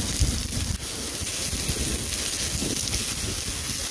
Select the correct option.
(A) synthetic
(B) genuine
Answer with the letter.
B